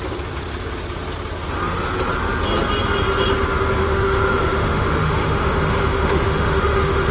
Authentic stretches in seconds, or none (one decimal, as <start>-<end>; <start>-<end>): 0.0-3.8